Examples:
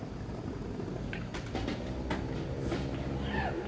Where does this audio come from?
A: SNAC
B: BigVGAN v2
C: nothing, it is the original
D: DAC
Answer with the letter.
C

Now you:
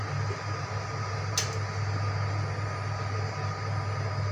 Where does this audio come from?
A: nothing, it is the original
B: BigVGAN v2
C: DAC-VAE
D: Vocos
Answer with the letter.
A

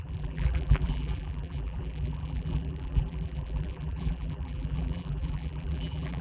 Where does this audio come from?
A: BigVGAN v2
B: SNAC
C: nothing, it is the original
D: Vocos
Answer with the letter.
A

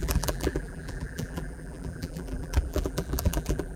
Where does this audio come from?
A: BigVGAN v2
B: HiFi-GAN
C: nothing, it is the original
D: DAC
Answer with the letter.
A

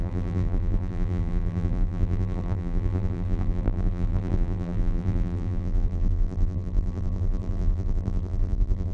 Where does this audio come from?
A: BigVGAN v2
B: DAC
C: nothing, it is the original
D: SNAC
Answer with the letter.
A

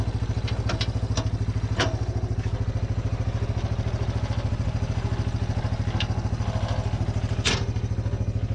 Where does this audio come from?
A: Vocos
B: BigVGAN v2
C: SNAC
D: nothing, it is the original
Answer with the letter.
D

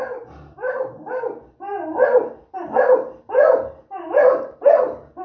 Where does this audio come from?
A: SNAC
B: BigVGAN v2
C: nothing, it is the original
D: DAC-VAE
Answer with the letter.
C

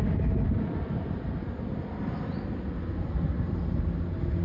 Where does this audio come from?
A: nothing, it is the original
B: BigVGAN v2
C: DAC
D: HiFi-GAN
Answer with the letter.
A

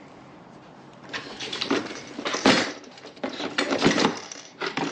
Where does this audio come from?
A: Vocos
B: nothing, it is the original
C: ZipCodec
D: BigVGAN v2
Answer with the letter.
D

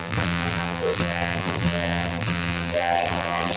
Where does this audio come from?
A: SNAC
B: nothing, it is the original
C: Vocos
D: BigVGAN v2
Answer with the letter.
D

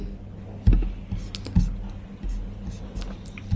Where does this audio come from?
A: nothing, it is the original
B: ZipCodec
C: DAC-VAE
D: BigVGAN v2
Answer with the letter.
A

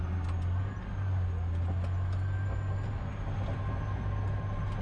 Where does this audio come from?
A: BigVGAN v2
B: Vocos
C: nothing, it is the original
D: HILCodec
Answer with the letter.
C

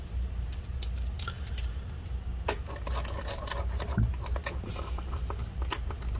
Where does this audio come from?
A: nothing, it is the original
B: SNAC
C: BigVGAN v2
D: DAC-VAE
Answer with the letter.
A